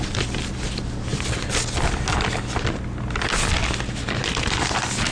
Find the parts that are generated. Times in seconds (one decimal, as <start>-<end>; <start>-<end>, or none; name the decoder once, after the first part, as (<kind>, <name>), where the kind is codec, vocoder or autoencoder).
none

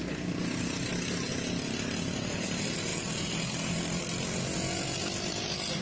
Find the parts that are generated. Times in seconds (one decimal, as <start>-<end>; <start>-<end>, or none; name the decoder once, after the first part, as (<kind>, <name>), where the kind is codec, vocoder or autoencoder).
none

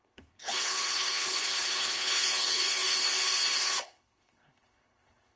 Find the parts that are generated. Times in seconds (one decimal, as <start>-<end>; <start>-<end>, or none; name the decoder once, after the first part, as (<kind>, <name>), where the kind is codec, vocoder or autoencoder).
0.0-5.4 (codec, HILCodec)

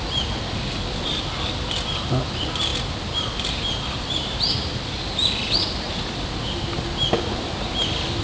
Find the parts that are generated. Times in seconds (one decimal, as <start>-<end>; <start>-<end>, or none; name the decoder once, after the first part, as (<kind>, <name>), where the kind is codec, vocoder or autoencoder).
none

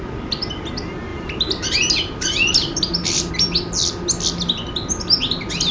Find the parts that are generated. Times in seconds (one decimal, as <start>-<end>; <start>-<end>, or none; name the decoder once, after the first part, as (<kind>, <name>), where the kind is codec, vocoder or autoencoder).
1.1-3.3 (vocoder, BigVGAN v2)

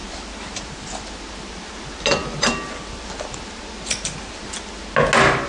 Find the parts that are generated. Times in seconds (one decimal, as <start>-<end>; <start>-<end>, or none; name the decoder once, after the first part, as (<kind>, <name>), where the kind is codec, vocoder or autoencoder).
none

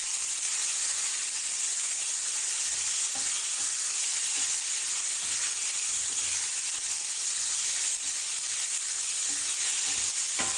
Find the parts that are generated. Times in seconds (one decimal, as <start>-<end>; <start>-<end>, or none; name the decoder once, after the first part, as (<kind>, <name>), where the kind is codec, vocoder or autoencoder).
0.6-2.2 (vocoder, Vocos)

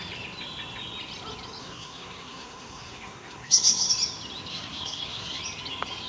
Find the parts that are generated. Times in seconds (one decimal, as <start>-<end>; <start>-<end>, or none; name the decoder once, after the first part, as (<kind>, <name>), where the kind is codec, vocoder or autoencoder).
1.6-3.9 (codec, SNAC); 4.5-5.4